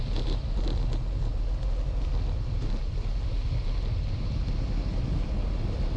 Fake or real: real